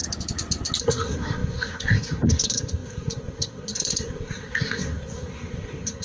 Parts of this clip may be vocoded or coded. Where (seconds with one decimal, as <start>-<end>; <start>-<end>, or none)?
0.8-6.0